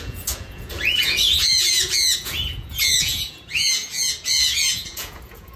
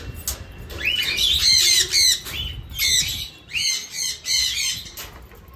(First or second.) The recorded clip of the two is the second